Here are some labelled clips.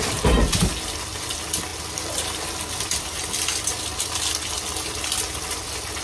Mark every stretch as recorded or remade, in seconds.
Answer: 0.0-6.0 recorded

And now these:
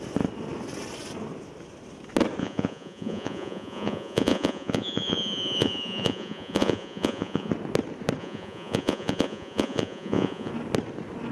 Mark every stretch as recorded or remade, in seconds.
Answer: 0.0-2.4 recorded; 2.4-7.5 remade; 7.5-8.2 recorded; 8.2-10.5 remade; 10.5-11.3 recorded

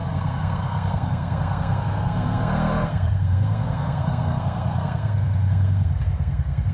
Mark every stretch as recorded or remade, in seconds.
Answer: 0.0-6.7 remade